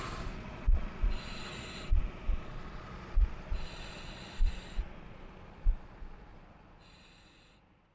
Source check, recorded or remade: remade